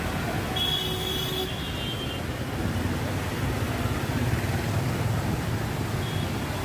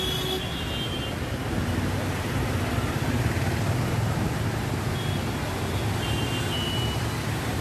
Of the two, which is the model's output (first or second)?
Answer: first